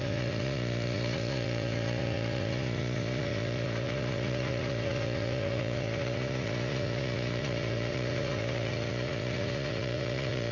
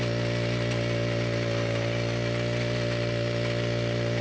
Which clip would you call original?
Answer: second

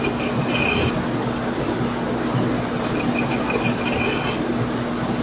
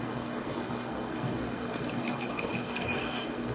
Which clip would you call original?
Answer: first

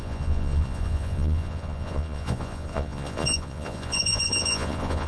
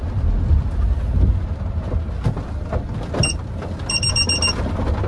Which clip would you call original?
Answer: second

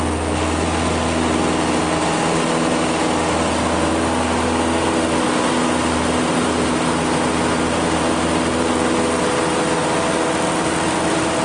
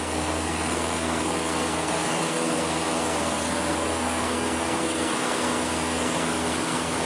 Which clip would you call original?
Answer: first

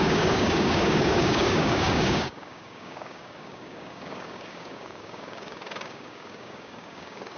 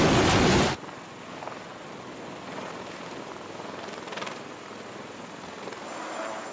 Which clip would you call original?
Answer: second